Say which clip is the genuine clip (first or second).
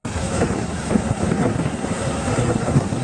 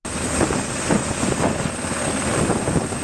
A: second